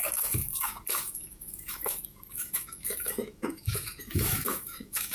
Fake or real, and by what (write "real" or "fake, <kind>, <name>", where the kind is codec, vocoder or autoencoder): fake, autoencoder, DAC-VAE